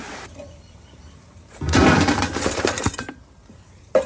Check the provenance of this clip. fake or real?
fake